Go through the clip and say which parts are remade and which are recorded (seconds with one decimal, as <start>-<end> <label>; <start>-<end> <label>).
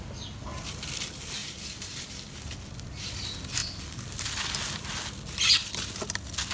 0.0-1.4 recorded; 1.4-3.1 remade; 3.1-6.5 recorded